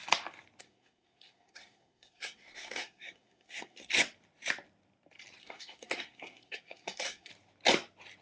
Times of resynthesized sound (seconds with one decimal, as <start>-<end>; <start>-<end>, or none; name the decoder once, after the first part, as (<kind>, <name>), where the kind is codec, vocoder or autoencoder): 0.6-3.9 (codec, SNAC); 5.4-7.3